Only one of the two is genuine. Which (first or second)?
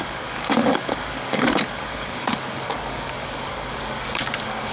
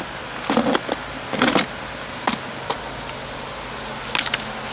second